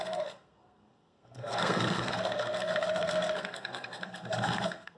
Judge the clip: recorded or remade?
remade